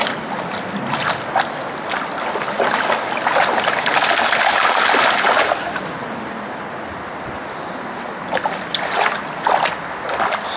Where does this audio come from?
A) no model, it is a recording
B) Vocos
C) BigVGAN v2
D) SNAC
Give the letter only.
A